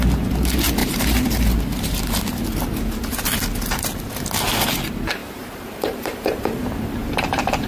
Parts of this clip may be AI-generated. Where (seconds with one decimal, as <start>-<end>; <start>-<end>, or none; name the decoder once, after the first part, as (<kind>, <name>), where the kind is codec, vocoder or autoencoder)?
0.8-2.2 (vocoder, BigVGAN v2); 5.2-6.6; 7.0-7.7